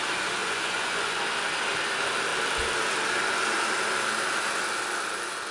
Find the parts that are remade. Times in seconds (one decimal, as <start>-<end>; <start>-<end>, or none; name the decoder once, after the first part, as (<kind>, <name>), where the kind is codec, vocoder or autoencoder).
0.4-1.2 (vocoder, Vocos)